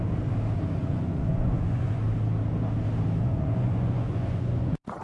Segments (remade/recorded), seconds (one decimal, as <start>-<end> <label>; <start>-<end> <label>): 0.0-0.8 recorded; 0.8-2.0 remade; 2.0-3.2 recorded; 3.2-5.0 remade

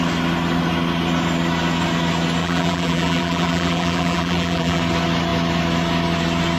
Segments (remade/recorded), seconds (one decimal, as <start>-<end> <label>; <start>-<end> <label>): 0.0-2.4 recorded; 2.4-4.8 remade; 4.8-6.6 recorded

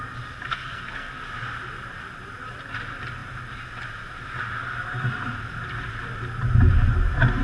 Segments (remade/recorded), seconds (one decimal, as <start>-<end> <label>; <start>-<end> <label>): 0.0-0.5 recorded; 0.5-1.1 remade; 1.1-7.4 recorded

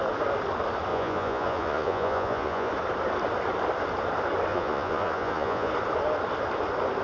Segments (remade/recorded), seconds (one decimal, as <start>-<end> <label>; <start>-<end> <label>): 0.0-0.9 recorded; 0.9-2.7 remade; 2.7-4.5 recorded; 4.5-5.7 remade; 5.7-7.0 recorded

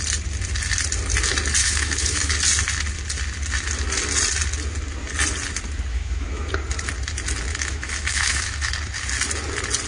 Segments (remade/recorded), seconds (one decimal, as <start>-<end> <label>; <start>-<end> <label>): 0.0-1.6 recorded; 1.6-2.3 remade; 2.3-5.9 recorded; 5.9-6.5 remade; 6.5-7.5 recorded; 7.5-8.7 remade; 8.7-9.9 recorded

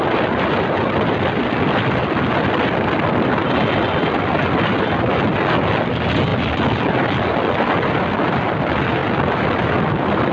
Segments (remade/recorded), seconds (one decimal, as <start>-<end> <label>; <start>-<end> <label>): 0.0-10.3 recorded